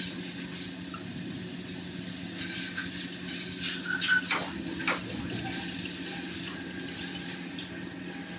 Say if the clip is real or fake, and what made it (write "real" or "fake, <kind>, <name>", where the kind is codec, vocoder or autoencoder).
real